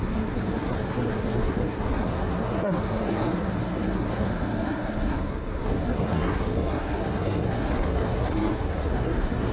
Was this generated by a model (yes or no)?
yes